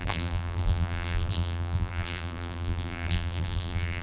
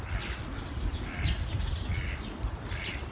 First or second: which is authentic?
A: second